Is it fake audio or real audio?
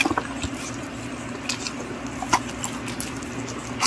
real